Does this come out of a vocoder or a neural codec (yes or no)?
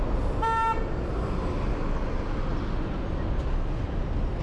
no